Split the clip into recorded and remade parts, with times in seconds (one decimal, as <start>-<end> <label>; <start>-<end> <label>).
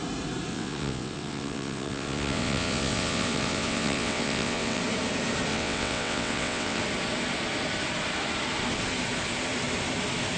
0.0-0.5 recorded; 0.5-4.8 remade; 4.8-5.5 recorded; 5.5-6.8 remade; 6.8-10.4 recorded